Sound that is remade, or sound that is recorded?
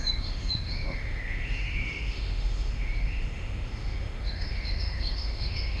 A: remade